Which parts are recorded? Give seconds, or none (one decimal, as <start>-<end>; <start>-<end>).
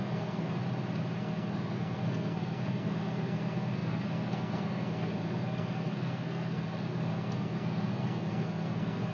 0.6-1.2